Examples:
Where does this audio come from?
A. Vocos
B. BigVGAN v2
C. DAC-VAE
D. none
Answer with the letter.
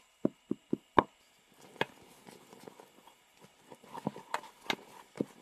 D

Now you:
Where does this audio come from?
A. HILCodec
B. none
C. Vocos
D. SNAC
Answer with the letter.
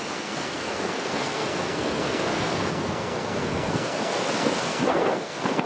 D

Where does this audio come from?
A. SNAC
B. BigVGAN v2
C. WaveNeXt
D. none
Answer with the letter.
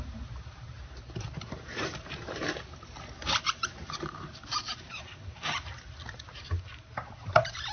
B